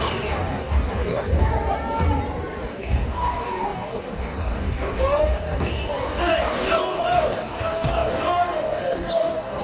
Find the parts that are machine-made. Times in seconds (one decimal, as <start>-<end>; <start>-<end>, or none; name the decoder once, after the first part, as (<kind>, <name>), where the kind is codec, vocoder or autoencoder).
0.0-1.5 (codec, DAC); 2.7-9.6